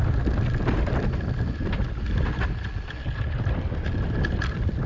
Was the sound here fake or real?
real